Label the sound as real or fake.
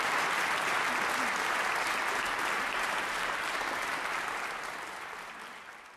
real